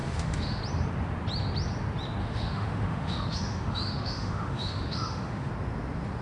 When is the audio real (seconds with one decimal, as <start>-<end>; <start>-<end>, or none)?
0.6-2.2; 5.5-6.2